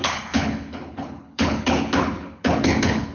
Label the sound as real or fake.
fake